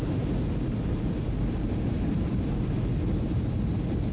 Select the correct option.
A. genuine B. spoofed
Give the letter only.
A